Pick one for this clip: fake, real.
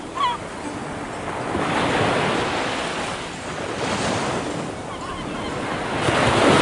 real